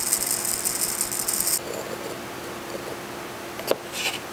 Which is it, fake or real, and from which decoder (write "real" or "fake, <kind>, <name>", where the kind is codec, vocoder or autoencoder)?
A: real